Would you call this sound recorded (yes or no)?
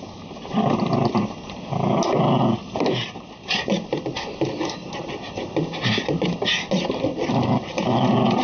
yes